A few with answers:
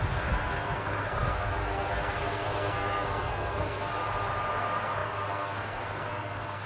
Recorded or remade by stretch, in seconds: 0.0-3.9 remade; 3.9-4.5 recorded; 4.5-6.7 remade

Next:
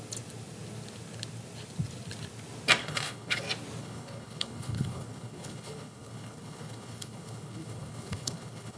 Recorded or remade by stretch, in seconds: 0.0-2.8 recorded; 2.8-3.4 remade; 3.4-3.8 recorded; 3.8-8.8 remade

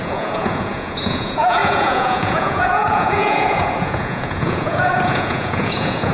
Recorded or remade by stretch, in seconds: 0.0-6.1 remade